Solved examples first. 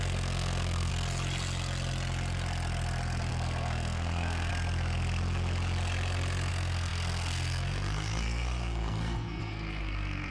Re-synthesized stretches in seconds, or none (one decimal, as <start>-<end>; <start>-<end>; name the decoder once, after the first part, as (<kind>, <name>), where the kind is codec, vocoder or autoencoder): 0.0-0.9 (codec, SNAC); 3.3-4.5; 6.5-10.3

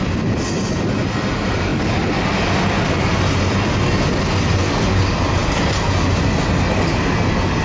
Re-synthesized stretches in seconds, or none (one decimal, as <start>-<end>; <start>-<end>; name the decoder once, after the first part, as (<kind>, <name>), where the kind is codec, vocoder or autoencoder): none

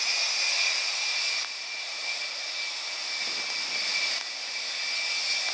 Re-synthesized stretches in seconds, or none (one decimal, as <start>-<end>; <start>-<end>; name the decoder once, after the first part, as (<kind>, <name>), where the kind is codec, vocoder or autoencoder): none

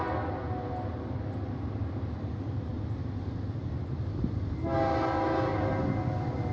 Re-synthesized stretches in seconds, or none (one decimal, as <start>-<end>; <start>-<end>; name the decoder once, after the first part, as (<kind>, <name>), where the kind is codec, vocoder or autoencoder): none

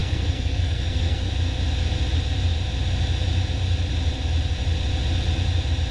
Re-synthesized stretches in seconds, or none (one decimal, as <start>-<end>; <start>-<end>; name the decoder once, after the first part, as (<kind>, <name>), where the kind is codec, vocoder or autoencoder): 0.0-1.3 (codec, SNAC)